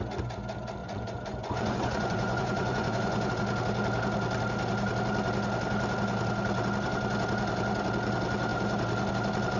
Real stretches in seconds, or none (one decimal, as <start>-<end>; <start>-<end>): 0.0-0.8; 3.3-9.6

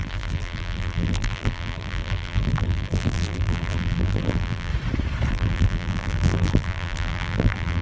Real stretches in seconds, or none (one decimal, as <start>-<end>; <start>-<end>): 4.7-5.3

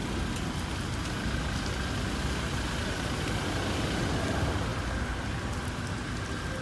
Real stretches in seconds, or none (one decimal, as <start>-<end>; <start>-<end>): 0.0-6.6

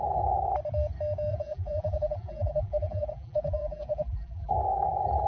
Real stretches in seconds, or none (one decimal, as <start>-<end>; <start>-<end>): 0.0-1.3; 4.5-5.3

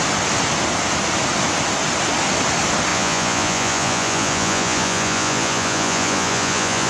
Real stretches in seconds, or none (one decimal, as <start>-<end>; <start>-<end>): 0.0-2.9

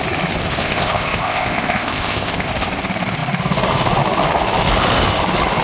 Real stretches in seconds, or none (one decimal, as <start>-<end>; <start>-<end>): 0.0-0.6; 2.5-5.6

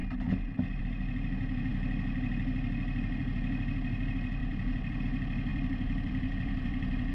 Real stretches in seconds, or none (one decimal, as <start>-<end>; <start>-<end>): 0.0-4.4; 5.0-5.5

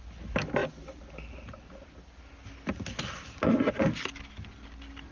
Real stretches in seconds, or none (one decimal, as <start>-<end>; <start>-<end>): 0.0-5.1